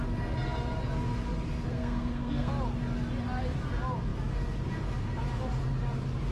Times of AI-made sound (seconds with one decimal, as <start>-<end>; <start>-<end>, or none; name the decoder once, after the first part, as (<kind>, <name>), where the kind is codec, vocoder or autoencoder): 1.7-2.5 (codec, SNAC)